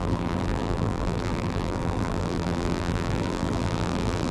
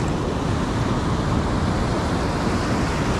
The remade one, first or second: first